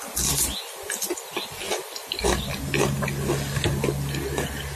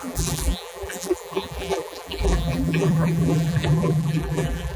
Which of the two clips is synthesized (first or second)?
second